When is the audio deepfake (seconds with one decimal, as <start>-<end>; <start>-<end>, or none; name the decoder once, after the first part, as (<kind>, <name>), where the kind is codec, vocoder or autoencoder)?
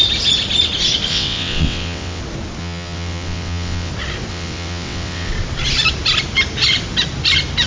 1.1-2.2 (vocoder, WaveNeXt); 2.6-3.9; 4.3-5.3